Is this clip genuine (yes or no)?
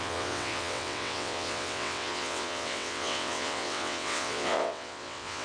no